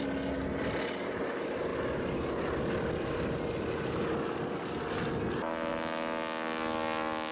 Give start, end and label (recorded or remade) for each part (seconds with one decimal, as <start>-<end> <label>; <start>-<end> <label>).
0.0-7.3 recorded

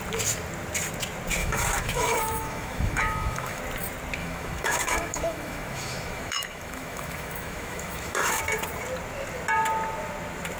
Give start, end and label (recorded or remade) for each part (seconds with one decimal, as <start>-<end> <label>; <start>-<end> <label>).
0.0-1.4 recorded; 1.4-3.6 remade; 3.6-4.2 recorded; 4.2-8.4 remade; 8.4-10.6 recorded

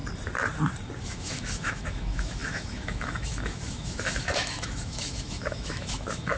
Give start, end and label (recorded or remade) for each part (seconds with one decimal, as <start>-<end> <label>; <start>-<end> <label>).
0.0-1.0 recorded; 1.0-6.4 remade

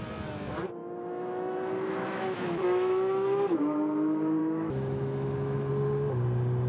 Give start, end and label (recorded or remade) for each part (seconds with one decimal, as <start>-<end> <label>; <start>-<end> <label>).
0.0-0.8 recorded; 0.8-3.6 remade; 3.6-4.4 recorded; 4.4-5.7 remade; 5.7-6.7 recorded

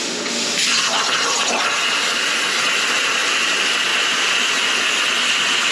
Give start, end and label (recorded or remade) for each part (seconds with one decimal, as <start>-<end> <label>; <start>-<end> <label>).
0.0-5.7 recorded

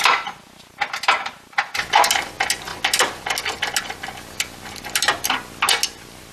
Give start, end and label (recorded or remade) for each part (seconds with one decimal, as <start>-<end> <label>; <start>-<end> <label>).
0.0-6.3 recorded

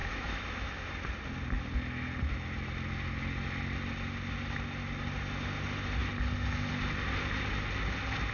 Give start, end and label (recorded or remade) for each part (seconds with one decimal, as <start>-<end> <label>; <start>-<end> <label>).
0.0-0.9 remade; 0.9-8.3 recorded

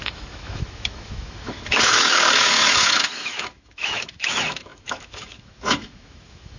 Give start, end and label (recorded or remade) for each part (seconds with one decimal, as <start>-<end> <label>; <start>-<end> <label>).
0.0-6.6 remade